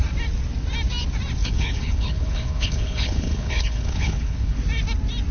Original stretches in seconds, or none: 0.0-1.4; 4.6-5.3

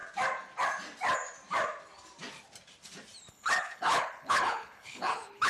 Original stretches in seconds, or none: 0.0-3.3

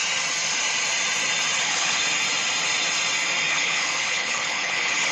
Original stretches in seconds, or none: 0.0-1.6; 2.0-3.5

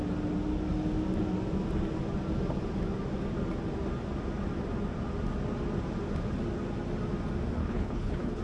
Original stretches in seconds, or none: 0.0-7.6

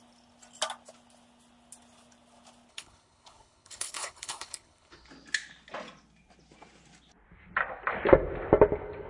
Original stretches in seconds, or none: 0.0-2.7; 5.1-9.1

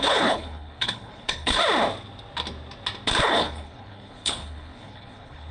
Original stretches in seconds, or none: 1.6-3.2